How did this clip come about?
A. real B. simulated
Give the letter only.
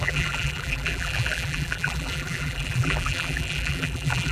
B